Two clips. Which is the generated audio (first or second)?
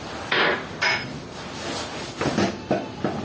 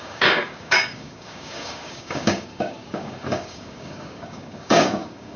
second